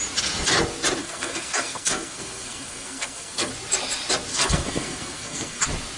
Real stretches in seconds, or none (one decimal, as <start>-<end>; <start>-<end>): 0.0-1.0; 3.5-4.3; 5.6-6.0